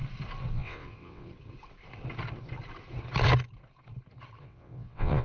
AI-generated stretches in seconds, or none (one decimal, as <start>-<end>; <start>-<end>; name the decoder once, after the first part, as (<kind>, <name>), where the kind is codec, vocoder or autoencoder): 0.5-1.3 (vocoder, WaveNeXt); 4.4-5.2